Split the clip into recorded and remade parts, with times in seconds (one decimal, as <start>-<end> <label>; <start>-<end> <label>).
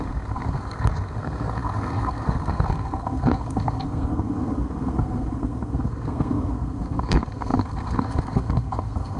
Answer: 0.0-9.2 remade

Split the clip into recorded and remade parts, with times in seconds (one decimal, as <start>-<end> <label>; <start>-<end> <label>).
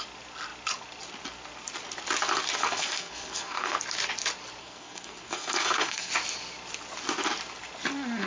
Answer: 0.0-2.6 recorded; 2.6-3.8 remade; 3.8-4.6 recorded; 4.6-6.1 remade; 6.1-8.3 recorded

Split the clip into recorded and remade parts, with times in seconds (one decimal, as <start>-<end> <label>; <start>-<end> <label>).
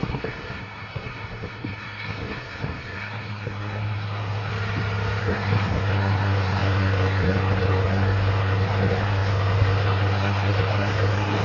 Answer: 0.0-4.5 remade; 4.5-5.2 recorded; 5.2-11.4 remade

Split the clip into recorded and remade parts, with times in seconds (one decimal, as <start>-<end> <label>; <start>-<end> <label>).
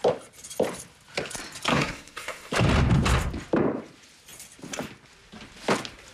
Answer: 0.0-1.7 recorded; 1.7-2.5 remade; 2.5-6.1 recorded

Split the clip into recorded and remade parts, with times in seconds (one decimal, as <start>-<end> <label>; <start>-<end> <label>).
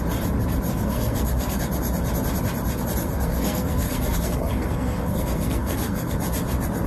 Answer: 0.0-0.7 recorded; 0.7-1.6 remade; 1.6-3.0 recorded; 3.0-6.2 remade; 6.2-6.9 recorded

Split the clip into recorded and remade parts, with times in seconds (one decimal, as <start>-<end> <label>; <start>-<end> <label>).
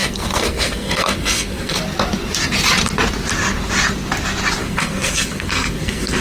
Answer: 0.0-1.8 remade; 1.8-4.6 recorded; 4.6-6.2 remade